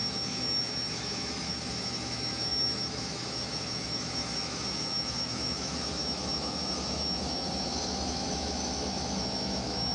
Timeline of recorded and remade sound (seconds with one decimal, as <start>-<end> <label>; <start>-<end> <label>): 0.0-9.9 remade